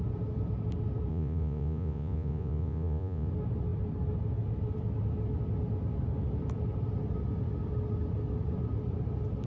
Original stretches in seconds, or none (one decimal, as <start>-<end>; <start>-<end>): 0.0-1.1; 3.3-9.5